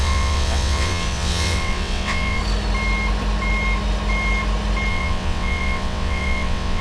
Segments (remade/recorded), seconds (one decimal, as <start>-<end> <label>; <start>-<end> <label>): 0.0-2.4 remade; 2.4-4.9 recorded; 4.9-6.8 remade